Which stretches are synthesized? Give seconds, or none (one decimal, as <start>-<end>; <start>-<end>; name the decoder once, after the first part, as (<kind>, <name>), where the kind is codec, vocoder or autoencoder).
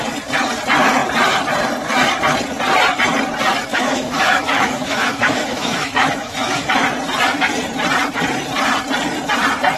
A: 3.7-6.7 (autoencoder, DAC-VAE)